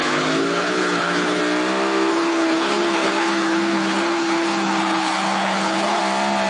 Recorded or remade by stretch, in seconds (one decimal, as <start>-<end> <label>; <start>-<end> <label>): 0.0-1.4 remade; 1.4-2.1 recorded; 2.1-6.0 remade; 6.0-6.5 recorded